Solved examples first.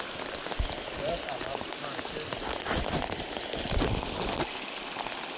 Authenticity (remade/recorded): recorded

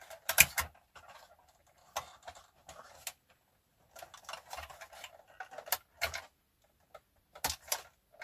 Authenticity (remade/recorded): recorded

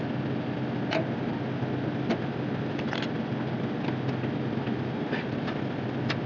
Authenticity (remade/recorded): recorded